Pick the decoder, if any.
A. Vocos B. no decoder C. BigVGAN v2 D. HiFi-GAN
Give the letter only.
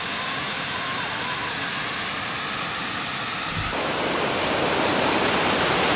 B